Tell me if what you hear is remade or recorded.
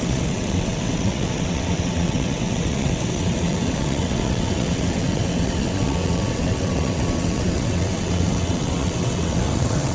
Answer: remade